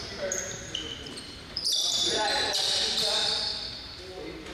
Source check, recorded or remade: remade